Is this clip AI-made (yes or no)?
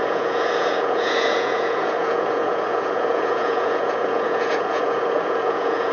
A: yes